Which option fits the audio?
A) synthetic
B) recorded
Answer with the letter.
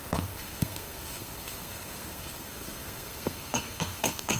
A